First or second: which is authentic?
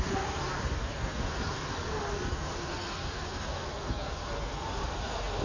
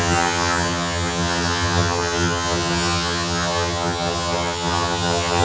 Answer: first